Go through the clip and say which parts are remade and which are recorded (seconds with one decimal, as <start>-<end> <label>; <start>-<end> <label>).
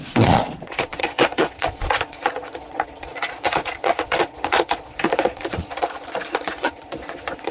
0.0-7.5 remade